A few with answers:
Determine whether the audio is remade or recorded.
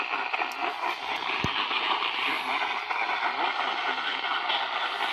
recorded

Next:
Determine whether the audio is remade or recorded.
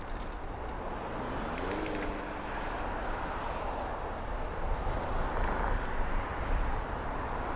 recorded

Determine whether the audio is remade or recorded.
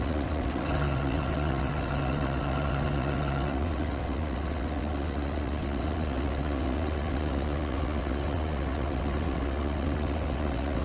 remade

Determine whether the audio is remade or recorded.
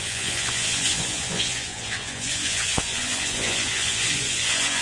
remade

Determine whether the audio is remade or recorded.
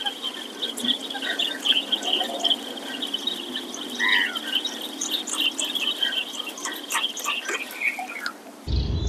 recorded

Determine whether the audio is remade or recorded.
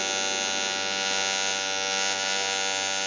recorded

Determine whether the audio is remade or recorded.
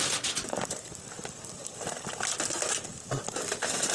recorded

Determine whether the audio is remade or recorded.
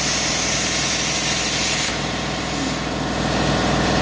recorded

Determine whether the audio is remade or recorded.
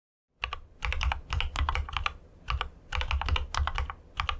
recorded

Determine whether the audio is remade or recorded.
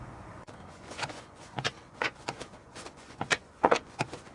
remade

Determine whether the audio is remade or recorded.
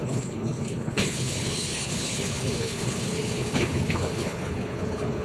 remade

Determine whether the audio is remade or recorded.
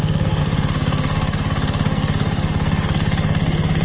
remade